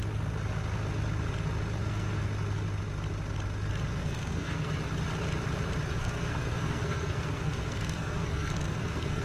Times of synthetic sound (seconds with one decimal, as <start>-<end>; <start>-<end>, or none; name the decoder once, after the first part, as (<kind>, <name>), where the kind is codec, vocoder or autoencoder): 1.8-2.3 (codec, SNAC); 4.0-4.7; 5.9-9.2